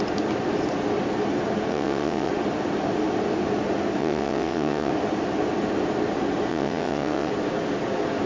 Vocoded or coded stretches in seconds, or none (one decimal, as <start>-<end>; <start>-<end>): 1.7-2.3; 4.0-4.9; 6.5-7.3